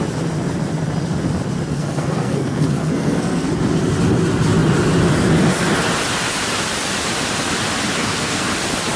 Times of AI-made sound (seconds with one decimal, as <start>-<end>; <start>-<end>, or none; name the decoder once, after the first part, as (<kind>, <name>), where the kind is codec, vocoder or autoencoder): 1.7-3.5 (codec, SNAC); 8.0-8.5